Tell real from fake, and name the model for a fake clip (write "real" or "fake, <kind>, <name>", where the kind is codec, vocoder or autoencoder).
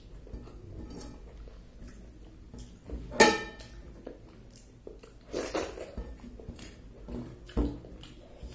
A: real